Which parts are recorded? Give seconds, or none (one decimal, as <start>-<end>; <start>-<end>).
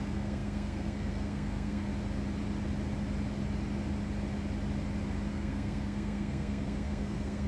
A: 1.9-5.3